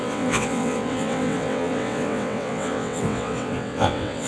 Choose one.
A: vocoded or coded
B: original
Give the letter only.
A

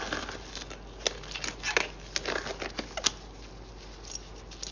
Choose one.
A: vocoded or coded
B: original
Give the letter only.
B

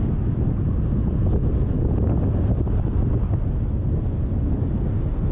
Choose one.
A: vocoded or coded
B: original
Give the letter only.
B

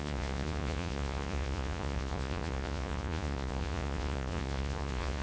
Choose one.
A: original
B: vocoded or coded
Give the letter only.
B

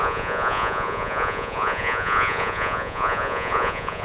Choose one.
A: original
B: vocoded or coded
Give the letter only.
B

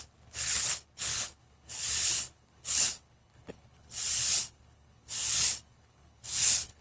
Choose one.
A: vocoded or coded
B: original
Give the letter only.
A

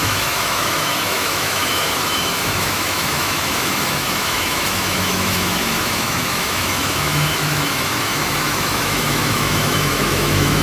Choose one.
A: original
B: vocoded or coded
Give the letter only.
B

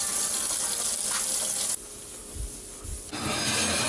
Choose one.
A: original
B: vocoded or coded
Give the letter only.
A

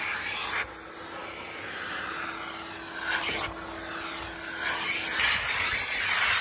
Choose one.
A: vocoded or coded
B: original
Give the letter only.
B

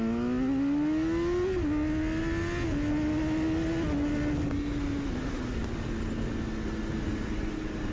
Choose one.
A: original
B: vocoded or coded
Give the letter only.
A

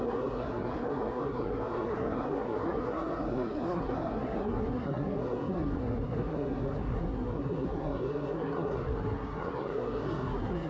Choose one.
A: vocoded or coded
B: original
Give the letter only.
A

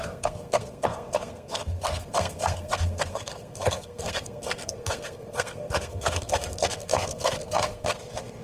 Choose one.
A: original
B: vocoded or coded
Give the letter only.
B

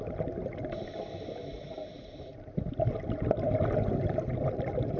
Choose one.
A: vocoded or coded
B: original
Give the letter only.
B